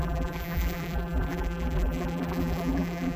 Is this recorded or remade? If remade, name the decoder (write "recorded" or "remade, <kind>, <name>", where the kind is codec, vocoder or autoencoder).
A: remade, vocoder, BigVGAN v2